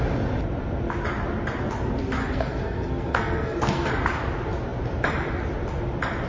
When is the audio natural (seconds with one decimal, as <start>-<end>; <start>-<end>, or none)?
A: 0.0-2.2; 3.9-6.3